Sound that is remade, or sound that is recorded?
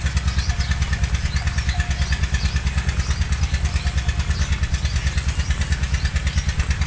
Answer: recorded